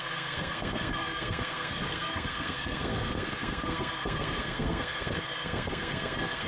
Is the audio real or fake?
fake